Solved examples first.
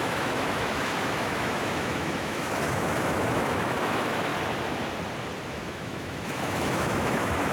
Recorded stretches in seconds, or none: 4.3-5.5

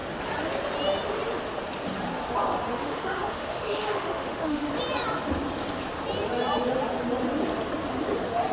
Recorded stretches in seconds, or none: 0.0-2.7; 4.7-8.5

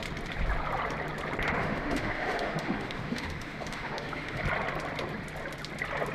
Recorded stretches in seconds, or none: 0.0-1.6; 4.4-6.1

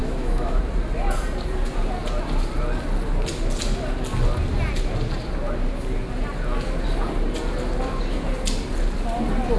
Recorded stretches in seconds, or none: 0.6-9.6

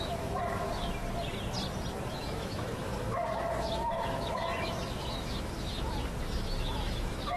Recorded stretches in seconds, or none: 1.0-2.1

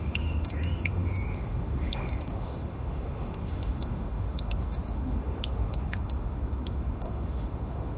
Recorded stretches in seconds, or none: none

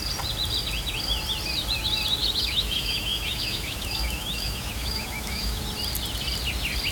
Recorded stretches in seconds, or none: 0.0-2.2; 5.6-6.9

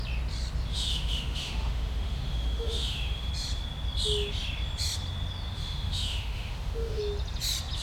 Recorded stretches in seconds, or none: 0.0-0.7; 3.3-5.6; 7.0-7.8